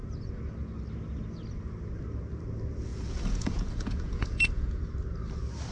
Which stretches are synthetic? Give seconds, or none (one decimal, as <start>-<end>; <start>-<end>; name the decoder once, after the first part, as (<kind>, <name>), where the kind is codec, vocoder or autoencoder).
2.9-4.8 (vocoder, Vocos)

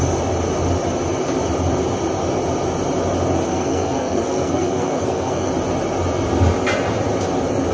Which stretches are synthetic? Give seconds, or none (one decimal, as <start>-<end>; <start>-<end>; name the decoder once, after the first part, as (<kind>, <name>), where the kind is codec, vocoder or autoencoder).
3.5-5.5 (codec, SNAC)

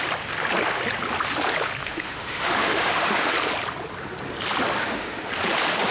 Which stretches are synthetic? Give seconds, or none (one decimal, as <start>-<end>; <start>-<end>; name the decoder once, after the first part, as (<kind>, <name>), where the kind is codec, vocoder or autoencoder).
1.8-3.3 (autoencoder, DAC-VAE); 4.8-5.3

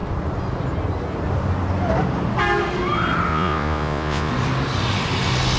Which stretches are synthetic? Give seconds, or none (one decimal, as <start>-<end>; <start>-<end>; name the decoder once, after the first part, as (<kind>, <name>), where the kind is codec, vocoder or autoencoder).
3.3-4.3 (vocoder, Vocos)

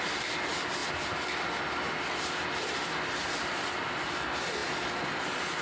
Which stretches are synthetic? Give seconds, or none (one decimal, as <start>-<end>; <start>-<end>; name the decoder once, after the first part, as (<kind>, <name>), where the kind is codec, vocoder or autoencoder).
none

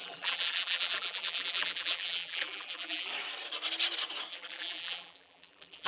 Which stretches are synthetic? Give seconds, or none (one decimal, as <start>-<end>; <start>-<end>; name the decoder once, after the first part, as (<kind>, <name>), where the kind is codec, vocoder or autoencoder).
0.0-3.1 (vocoder, BigVGAN v2); 4.3-5.9